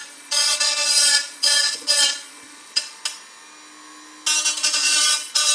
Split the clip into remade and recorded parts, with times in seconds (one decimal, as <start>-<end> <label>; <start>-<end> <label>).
0.0-3.0 remade; 3.0-4.6 recorded; 4.6-5.5 remade